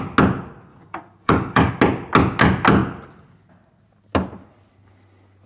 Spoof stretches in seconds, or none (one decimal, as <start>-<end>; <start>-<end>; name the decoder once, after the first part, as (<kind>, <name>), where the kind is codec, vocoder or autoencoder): 0.7-1.7 (codec, DAC)